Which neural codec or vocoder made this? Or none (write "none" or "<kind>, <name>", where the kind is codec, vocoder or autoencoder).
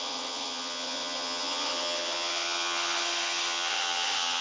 vocoder, HiFi-GAN